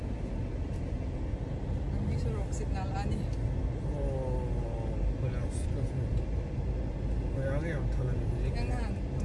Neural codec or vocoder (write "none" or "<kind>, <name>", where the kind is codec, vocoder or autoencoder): none